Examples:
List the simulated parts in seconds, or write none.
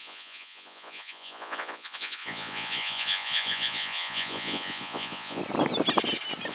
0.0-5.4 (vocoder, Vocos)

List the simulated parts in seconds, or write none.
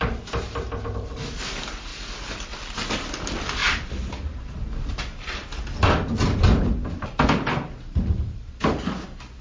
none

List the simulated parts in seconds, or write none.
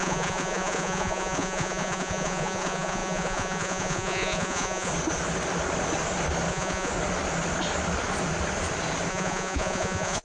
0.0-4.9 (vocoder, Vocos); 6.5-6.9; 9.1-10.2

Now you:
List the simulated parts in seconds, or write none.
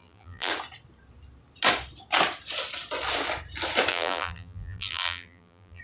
0.0-0.5 (vocoder, BigVGAN v2); 3.9-5.8